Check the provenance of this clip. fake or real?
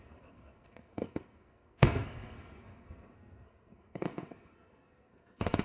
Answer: fake